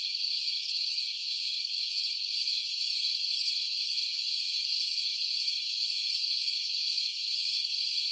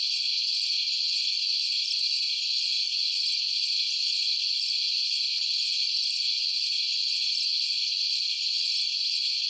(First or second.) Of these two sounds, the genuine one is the second